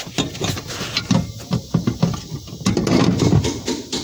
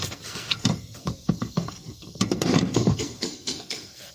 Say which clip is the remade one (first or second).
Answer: second